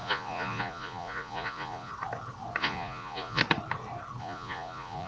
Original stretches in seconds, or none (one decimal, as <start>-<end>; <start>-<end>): 1.9-2.6; 3.4-4.2